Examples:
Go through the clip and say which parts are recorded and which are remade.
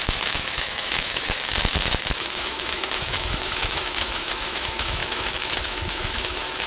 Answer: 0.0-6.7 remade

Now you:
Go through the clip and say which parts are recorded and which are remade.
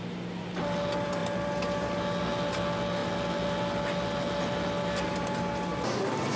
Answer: 0.0-6.4 recorded